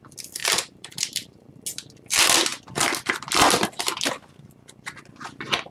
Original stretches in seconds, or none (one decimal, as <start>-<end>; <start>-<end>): 0.0-0.4; 1.5-5.7

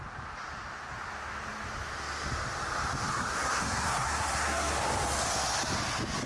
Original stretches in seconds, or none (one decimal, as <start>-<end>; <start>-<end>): 0.0-3.1; 4.7-6.3

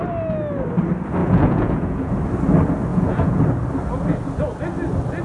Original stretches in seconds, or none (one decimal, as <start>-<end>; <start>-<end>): 0.0-1.2; 2.1-2.9; 3.4-5.2

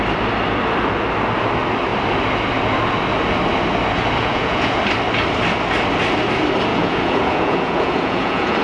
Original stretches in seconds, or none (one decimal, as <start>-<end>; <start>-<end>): 0.0-4.2; 4.8-6.7

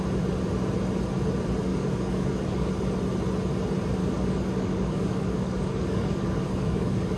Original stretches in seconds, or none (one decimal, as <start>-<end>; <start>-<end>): 0.0-1.7; 2.7-4.0